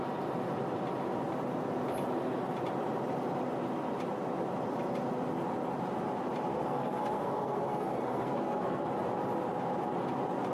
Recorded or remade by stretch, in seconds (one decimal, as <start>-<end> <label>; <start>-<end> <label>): 0.0-6.5 recorded; 6.5-8.8 remade; 8.8-10.5 recorded